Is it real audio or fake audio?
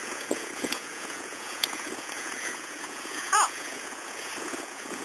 fake